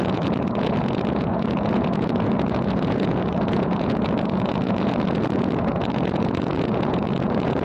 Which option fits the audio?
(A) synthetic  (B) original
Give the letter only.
A